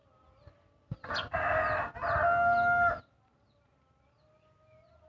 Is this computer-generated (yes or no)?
no